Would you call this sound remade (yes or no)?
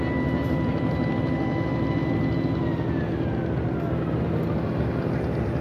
no